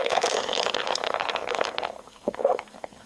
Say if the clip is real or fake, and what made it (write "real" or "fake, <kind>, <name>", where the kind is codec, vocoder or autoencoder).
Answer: fake, codec, SNAC